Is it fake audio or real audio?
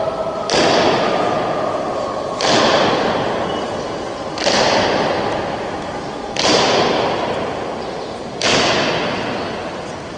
real